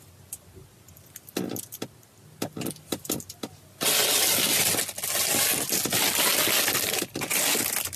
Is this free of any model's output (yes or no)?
yes